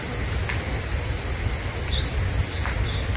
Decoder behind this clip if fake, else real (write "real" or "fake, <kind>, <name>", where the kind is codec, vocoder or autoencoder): real